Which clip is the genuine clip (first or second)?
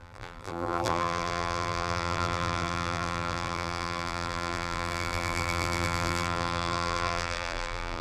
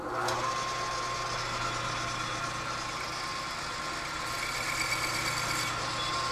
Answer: second